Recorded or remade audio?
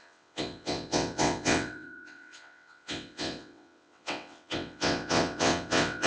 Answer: remade